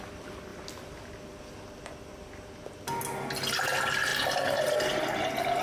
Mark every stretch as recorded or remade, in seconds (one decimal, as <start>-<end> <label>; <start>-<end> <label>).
0.0-5.6 recorded